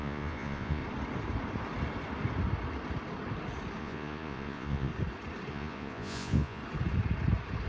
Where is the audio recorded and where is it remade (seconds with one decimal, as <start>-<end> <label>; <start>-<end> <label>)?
0.0-0.8 remade; 0.8-3.8 recorded; 3.8-4.9 remade; 4.9-5.5 recorded; 5.5-6.6 remade; 6.6-7.7 recorded